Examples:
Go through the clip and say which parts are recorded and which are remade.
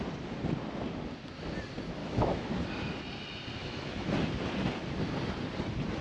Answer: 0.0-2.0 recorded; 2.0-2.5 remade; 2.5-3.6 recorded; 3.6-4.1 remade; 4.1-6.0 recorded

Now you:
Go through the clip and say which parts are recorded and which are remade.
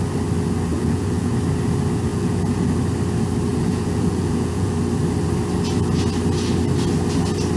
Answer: 0.0-0.7 recorded; 0.7-1.3 remade; 1.3-2.1 recorded; 2.1-2.7 remade; 2.7-3.5 recorded; 3.5-4.7 remade; 4.7-7.6 recorded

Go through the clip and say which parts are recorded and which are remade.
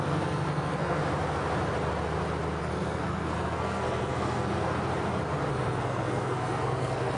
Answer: 0.0-1.0 remade; 1.0-2.6 recorded; 2.6-4.7 remade; 4.7-5.5 recorded; 5.5-7.2 remade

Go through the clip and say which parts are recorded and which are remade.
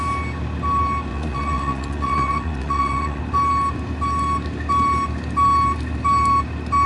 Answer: 0.0-1.1 recorded; 1.1-3.2 remade; 3.2-6.9 recorded